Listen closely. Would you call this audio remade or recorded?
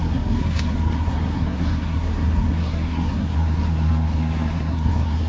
remade